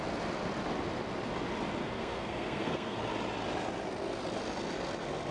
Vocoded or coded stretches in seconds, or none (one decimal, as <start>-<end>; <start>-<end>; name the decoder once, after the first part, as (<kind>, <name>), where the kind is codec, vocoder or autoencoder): 1.8-3.0 (codec, SNAC)